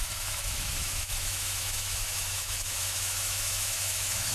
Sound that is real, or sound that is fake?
fake